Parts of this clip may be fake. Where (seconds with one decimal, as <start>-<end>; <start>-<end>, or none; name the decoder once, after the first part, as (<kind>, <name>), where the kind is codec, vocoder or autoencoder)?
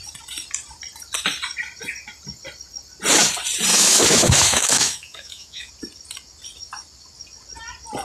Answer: 3.7-5.7 (autoencoder, DAC-VAE)